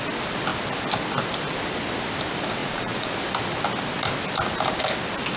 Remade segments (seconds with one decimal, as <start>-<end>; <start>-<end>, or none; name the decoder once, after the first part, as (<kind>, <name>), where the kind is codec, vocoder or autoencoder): 2.6-3.1 (vocoder, Vocos)